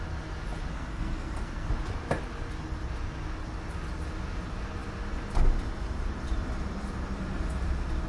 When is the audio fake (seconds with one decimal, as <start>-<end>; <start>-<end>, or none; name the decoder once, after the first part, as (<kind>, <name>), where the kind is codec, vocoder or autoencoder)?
0.7-1.7 (codec, SNAC)